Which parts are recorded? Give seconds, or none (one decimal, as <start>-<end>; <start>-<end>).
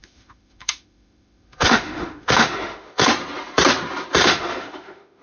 3.1-4.2